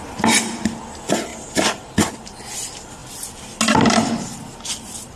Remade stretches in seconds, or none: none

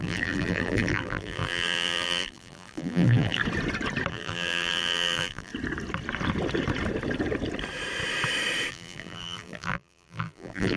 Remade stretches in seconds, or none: 0.0-3.4 (vocoder, BigVGAN v2); 4.1-5.5; 8.7-10.8

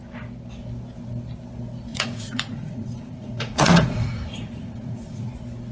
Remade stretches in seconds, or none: 1.9-5.3 (vocoder, Vocos)

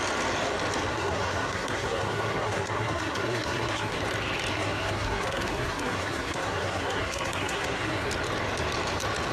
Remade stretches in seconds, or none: 0.9-4.0 (codec, SNAC); 4.5-8.1

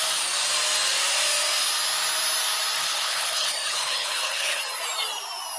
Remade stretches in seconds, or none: 2.8-4.6 (codec, HILCodec)

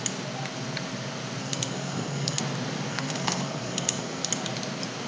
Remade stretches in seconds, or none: 1.4-2.4 (codec, SNAC); 2.9-4.3

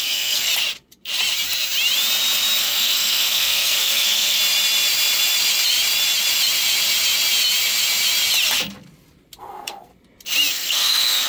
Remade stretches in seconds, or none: 0.0-0.5 (codec, SNAC); 2.6-4.4; 9.4-9.9; 10.5-11.3